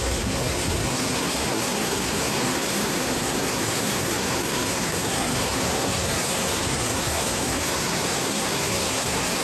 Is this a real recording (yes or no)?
no